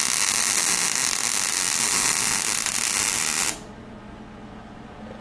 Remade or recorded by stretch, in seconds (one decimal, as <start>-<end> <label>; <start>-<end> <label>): 0.0-5.2 recorded

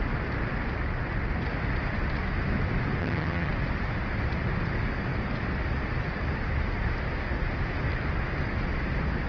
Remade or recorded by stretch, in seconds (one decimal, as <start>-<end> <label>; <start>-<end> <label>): 0.0-3.0 recorded; 3.0-3.5 remade; 3.5-9.3 recorded

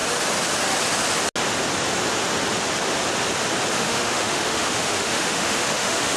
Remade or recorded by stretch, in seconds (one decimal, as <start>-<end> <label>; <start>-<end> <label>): 0.0-3.7 recorded; 3.7-6.2 remade

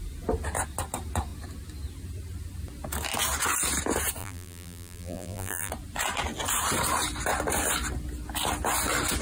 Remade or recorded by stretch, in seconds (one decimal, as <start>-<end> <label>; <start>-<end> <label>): 0.0-4.2 recorded; 4.2-5.7 remade; 5.7-9.2 recorded